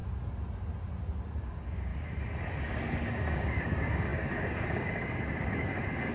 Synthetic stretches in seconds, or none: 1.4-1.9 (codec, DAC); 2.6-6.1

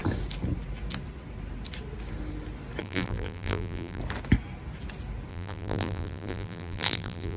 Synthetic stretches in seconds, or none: 2.8-4.0 (vocoder, BigVGAN v2); 5.3-7.4

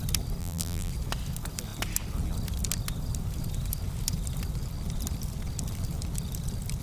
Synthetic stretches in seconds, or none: 0.4-0.9 (vocoder, BigVGAN v2)

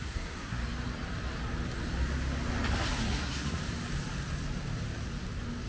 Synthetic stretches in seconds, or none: 0.0-0.6 (codec, SNAC); 3.0-3.6

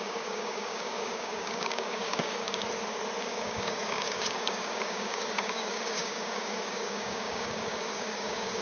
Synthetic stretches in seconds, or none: 0.0-2.6 (codec, DAC); 3.2-8.6